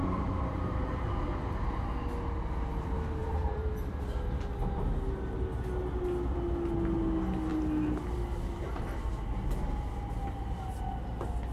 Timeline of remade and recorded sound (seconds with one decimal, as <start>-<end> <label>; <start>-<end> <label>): 0.0-1.1 remade; 1.1-3.2 recorded; 3.2-4.0 remade; 4.0-11.5 recorded

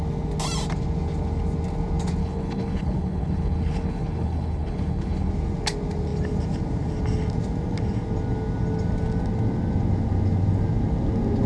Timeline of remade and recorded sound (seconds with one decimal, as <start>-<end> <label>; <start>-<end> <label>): 0.0-2.2 recorded; 2.2-5.3 remade; 5.3-11.5 recorded

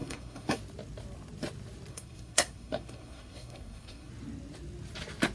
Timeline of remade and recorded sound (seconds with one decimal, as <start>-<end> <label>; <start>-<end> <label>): 0.0-0.6 remade; 0.6-1.9 recorded; 1.9-4.1 remade; 4.1-5.3 recorded

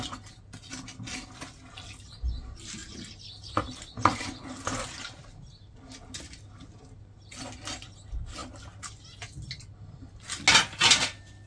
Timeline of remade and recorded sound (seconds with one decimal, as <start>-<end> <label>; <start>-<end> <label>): 0.0-11.5 recorded

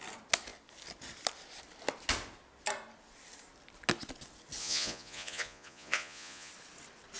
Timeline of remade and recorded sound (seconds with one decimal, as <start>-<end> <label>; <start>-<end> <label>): 0.0-4.6 recorded; 4.6-6.5 remade; 6.5-7.2 recorded